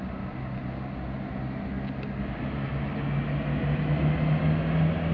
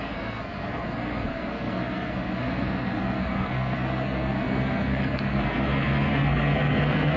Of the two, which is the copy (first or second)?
second